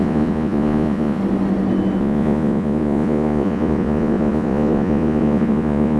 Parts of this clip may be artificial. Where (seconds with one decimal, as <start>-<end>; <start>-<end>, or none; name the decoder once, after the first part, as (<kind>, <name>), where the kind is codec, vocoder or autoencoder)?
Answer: 0.0-1.2 (vocoder, Vocos); 2.0-6.0